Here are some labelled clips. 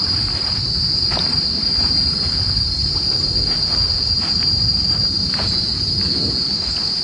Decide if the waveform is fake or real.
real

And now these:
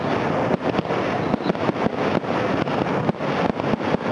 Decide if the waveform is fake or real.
real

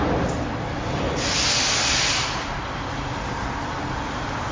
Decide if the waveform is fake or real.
real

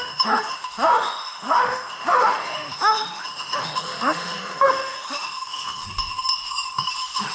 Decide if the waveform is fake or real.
fake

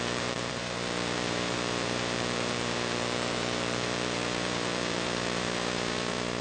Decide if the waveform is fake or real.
fake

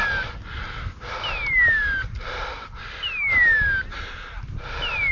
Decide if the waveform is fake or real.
real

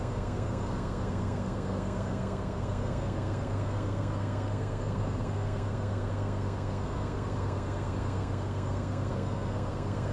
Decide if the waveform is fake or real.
fake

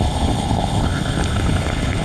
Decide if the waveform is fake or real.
fake